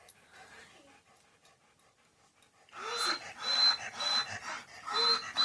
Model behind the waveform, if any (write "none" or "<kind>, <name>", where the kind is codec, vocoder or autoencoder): none